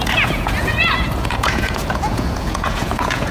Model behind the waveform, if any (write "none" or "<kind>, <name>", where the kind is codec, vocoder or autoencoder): vocoder, Vocos